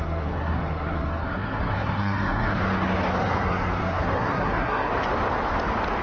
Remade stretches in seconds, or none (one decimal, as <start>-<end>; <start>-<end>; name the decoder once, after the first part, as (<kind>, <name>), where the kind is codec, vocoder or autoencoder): 0.0-2.6 (codec, SNAC); 3.2-4.9